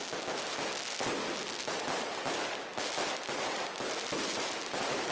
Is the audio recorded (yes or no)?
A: yes